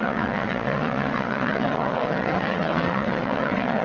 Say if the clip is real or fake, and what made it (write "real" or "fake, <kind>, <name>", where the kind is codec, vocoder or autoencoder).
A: fake, vocoder, WaveNeXt